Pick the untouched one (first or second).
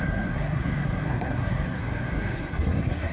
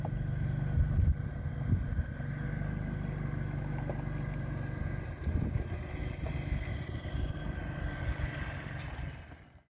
second